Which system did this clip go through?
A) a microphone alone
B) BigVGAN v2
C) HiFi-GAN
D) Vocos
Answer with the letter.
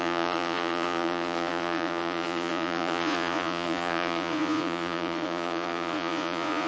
D